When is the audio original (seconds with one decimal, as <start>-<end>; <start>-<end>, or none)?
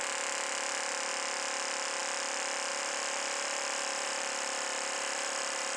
0.0-2.7